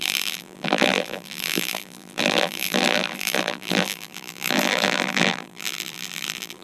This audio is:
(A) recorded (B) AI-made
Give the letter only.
B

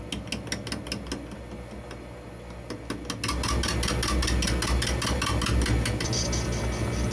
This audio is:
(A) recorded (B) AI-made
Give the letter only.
A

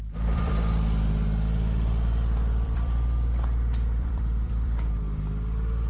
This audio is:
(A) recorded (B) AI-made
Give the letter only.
B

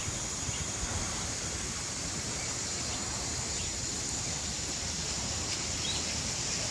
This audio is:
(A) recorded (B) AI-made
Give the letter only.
B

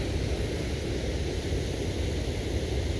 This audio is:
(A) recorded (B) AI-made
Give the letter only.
A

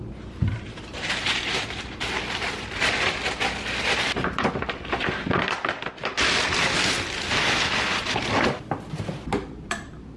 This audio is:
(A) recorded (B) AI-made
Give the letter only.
B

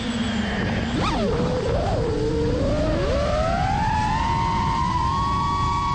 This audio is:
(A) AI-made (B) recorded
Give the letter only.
B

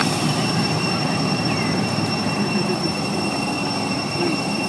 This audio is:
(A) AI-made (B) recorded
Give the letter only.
A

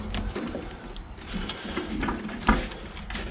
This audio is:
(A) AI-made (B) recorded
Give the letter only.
B